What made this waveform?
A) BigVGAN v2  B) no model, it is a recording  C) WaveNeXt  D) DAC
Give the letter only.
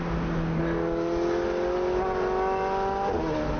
B